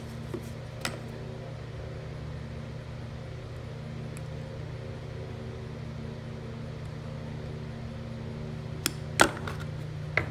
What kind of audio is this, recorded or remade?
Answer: recorded